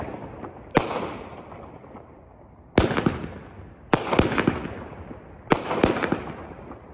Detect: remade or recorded recorded